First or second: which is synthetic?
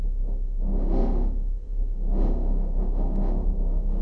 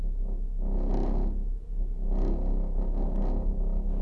first